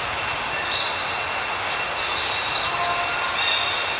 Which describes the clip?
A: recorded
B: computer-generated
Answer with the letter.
A